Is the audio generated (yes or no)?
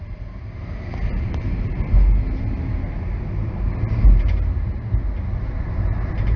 no